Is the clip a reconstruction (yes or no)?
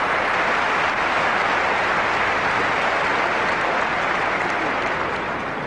no